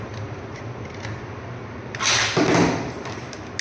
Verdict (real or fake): real